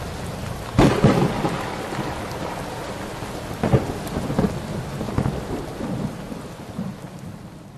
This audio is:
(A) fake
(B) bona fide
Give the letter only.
B